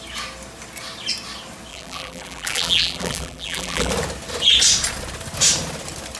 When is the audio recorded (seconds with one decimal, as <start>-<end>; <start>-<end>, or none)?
0.0-1.7; 3.9-6.2